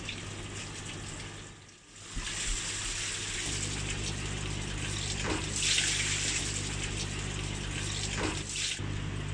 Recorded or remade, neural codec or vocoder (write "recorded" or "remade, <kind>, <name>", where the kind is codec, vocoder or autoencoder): recorded